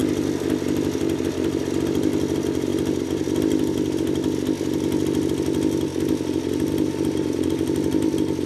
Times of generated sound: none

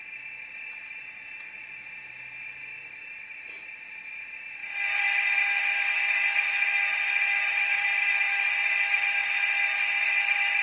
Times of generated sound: 2.7-3.8; 7.5-8.5

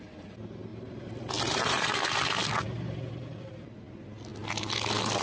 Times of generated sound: 0.7-3.5

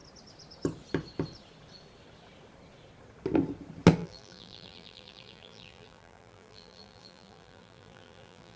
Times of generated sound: 4.0-8.6

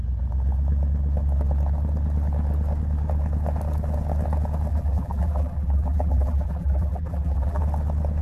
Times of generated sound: 4.7-7.6

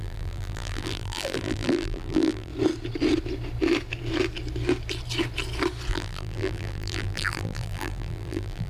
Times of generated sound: 0.0-2.5; 5.9-8.7